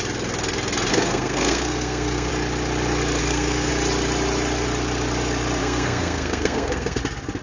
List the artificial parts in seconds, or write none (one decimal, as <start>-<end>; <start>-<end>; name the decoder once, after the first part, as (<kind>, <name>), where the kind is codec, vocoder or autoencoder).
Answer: 0.9-2.3 (codec, SNAC); 3.2-3.7; 5.6-7.0